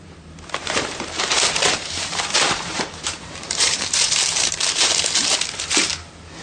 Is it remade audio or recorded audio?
remade